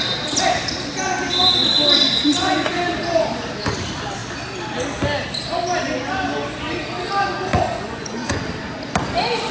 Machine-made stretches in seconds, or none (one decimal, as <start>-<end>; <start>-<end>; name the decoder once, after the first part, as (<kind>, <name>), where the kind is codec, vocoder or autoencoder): 2.1-2.8 (vocoder, Vocos); 7.5-8.4